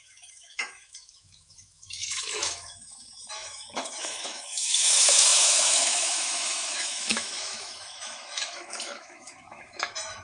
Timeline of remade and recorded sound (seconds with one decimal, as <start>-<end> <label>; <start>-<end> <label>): 0.0-10.2 remade